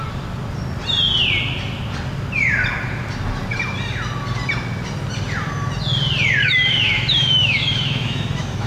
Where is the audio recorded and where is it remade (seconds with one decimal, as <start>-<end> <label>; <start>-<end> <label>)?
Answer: 0.0-6.4 recorded; 6.4-8.7 remade